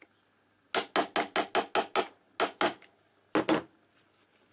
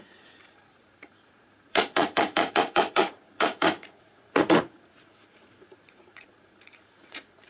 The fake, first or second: second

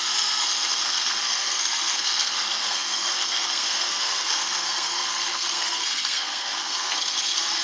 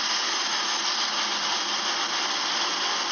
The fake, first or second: first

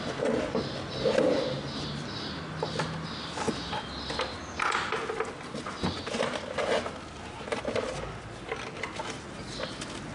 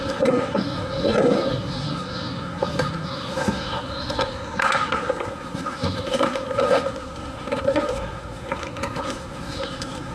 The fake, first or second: second